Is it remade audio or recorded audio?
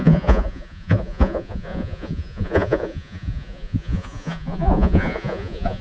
remade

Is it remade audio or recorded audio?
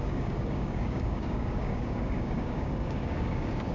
remade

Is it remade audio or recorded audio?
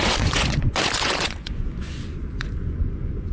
remade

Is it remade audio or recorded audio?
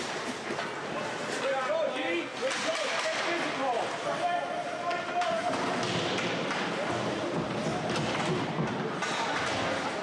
recorded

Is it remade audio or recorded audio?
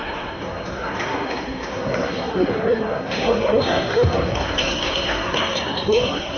remade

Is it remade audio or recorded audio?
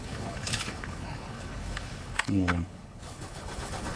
remade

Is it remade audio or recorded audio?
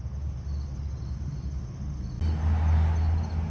recorded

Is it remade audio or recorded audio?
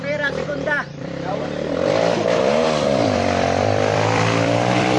remade